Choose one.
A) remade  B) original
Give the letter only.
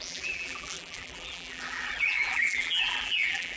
A